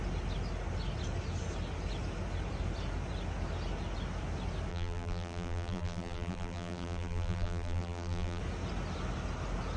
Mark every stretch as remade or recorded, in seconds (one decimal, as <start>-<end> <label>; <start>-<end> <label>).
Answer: 0.0-4.7 recorded; 4.7-8.4 remade; 8.4-9.8 recorded